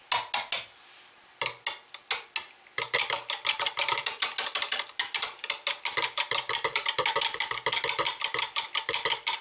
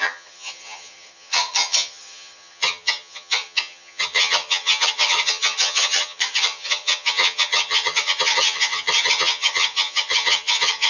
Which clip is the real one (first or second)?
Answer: first